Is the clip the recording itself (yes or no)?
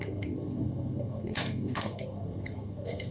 no